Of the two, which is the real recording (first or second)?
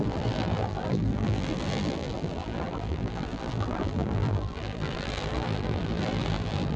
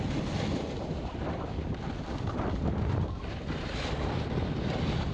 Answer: second